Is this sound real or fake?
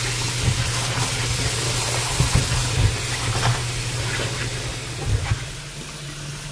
real